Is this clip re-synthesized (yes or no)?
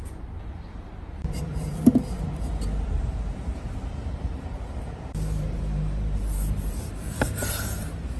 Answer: yes